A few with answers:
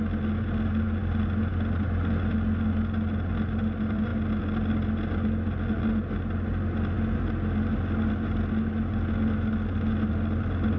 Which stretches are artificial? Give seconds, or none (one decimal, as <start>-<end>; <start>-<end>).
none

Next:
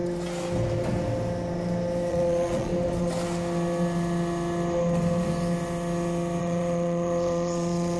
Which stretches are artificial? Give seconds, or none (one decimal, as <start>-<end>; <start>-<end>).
2.1-2.7; 6.4-8.0

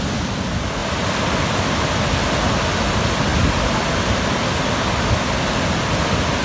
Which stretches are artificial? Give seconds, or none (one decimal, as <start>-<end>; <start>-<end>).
none

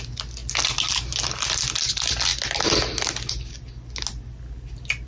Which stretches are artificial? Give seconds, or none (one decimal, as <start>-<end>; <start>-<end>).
none

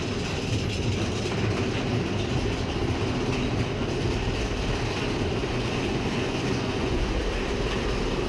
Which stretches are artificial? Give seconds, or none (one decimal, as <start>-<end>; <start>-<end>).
5.4-7.2

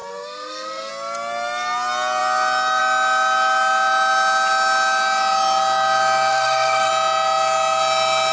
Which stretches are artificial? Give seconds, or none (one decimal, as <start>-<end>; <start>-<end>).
0.0-0.9; 6.3-6.9